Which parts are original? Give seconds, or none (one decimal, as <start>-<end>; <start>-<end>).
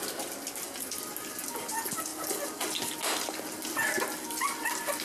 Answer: 0.0-5.0